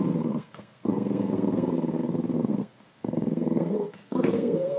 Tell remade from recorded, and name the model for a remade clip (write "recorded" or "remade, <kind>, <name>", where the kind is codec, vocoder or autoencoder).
remade, codec, SNAC